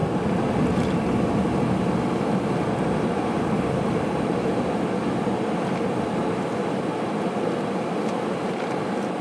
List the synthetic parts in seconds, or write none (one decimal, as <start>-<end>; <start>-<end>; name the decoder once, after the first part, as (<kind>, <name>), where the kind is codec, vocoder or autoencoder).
none